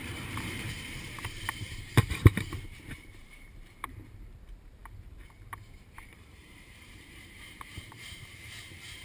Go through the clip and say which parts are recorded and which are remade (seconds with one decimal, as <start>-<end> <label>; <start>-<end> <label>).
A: 0.0-9.0 remade